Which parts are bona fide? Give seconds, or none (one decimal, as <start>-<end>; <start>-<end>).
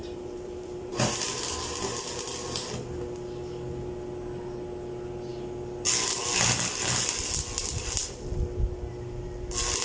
1.2-9.8